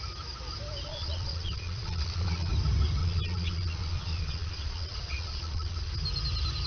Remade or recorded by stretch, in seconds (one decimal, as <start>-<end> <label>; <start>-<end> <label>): 0.0-0.9 recorded; 0.9-2.5 remade; 2.5-3.0 recorded; 3.0-5.9 remade; 5.9-6.7 recorded